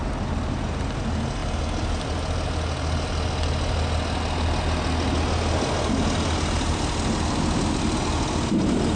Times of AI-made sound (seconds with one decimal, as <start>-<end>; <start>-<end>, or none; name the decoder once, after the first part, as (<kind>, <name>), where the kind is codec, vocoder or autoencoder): none